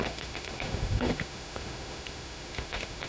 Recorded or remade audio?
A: remade